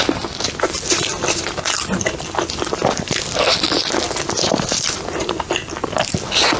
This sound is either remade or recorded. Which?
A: recorded